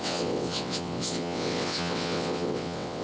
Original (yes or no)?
no